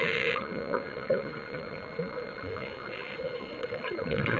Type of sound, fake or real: fake